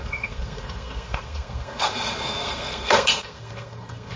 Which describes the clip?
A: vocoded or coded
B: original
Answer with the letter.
A